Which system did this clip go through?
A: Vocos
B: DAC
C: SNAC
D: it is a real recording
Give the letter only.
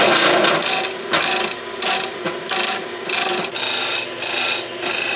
D